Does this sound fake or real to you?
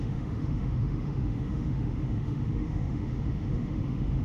fake